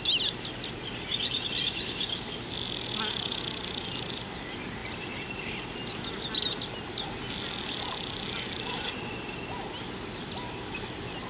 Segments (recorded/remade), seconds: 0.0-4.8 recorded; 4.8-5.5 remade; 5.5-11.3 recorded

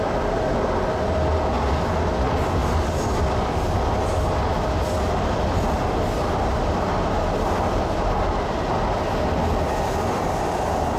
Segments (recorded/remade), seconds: 0.0-11.0 recorded

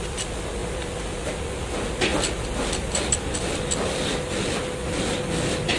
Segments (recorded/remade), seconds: 0.0-5.8 recorded

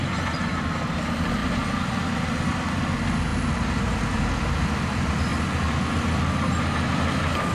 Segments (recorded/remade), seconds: 0.0-0.5 recorded; 0.5-3.3 remade; 3.3-3.8 recorded; 3.8-5.3 remade; 5.3-7.5 recorded

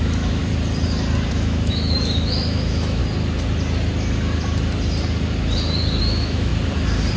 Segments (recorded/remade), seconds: 0.0-0.4 remade; 0.4-1.3 recorded; 1.3-3.0 remade; 3.0-6.0 recorded; 6.0-6.5 remade; 6.5-7.2 recorded

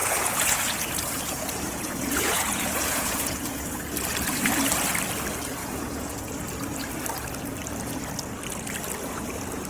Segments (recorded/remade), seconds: 0.0-3.8 remade; 3.8-5.6 recorded; 5.6-6.3 remade; 6.3-9.7 recorded

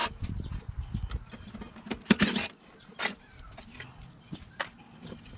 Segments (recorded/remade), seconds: 0.0-5.4 recorded